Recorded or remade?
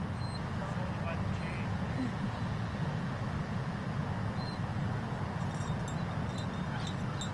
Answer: recorded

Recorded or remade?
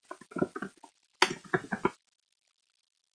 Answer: recorded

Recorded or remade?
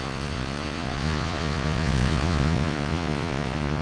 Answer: remade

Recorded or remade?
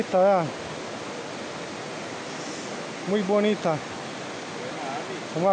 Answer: recorded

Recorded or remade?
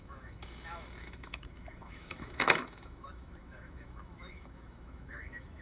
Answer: remade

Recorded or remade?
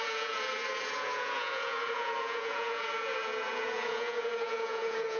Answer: remade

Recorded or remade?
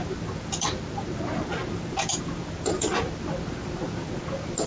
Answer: recorded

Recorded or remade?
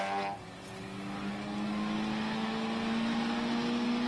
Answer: recorded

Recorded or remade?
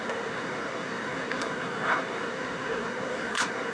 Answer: remade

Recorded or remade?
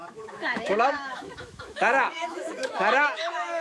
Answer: remade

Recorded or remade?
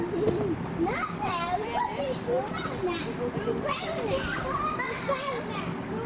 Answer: recorded